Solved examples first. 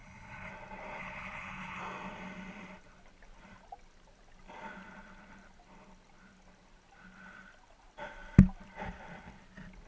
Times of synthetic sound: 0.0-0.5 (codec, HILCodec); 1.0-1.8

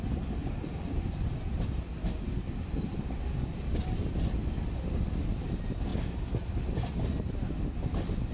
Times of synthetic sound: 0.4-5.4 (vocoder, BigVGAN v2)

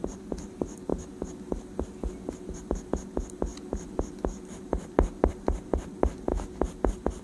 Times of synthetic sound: 0.0-0.9 (vocoder, BigVGAN v2); 2.7-3.5; 4.0-6.3

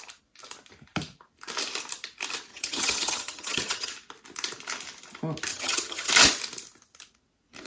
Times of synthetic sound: 2.5-3.9 (vocoder, HiFi-GAN); 5.5-6.1